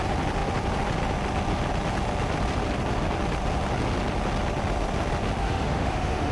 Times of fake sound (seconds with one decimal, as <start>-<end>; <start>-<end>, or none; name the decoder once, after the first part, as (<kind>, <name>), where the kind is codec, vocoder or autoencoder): 5.4-6.3 (autoencoder, DAC-VAE)